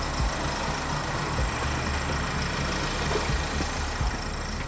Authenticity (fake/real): real